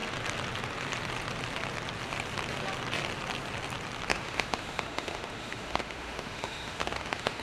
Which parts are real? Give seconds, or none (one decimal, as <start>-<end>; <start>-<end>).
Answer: 0.0-4.1

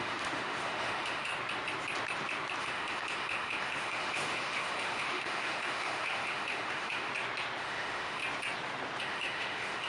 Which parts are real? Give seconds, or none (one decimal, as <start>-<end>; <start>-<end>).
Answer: 1.3-2.6; 7.1-7.6; 8.2-9.0

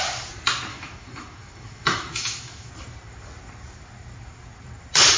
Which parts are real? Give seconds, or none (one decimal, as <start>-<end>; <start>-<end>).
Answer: 0.0-0.7; 2.7-5.2

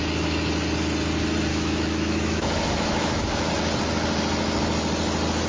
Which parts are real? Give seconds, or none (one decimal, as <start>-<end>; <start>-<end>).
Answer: 0.0-1.5; 3.5-5.5

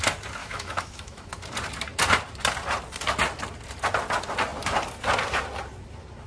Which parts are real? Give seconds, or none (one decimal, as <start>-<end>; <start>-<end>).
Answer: 0.0-0.4; 1.3-6.3

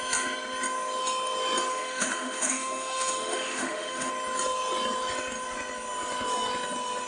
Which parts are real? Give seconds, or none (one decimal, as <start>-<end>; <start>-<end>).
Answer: 0.0-1.7; 4.1-7.1

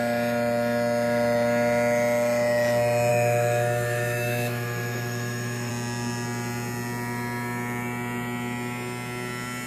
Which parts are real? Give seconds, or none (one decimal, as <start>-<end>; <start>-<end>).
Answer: 0.0-3.1; 5.7-9.7

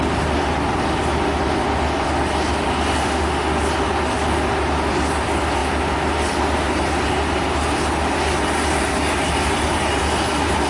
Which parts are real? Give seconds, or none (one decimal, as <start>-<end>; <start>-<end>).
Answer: 0.0-3.0; 3.6-10.7